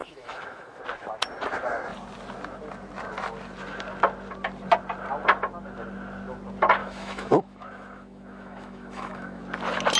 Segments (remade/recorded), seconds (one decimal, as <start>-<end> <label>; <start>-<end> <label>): 0.0-0.8 remade; 0.8-6.8 recorded; 6.8-9.4 remade; 9.4-10.0 recorded